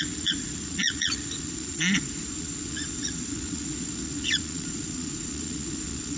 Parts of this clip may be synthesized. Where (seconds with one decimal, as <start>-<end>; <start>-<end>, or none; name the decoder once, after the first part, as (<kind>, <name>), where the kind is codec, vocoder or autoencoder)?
0.0-6.2 (vocoder, Vocos)